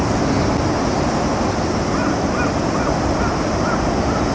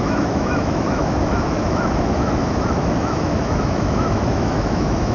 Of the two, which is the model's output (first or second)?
second